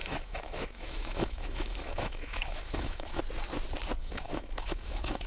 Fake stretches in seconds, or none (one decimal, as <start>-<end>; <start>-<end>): 0.0-3.2; 4.0-5.3